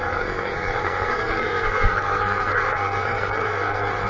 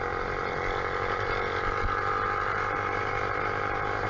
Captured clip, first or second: second